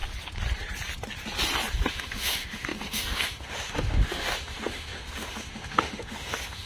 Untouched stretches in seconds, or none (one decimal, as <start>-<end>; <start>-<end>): 0.0-1.9